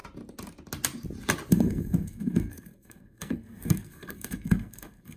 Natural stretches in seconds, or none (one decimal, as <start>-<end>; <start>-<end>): 0.0-1.5